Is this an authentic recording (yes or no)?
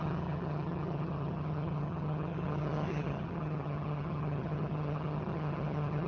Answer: no